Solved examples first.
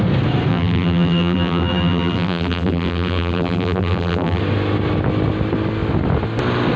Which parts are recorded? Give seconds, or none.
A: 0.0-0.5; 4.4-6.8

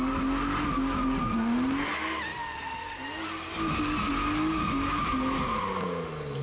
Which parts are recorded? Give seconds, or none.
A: 0.0-6.4

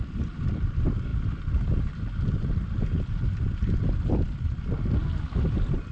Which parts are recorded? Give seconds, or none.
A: 0.0-1.1; 4.6-5.9

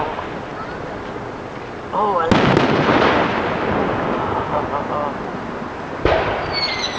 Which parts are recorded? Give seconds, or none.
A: 0.0-7.0